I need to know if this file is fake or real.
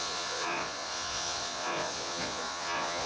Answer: fake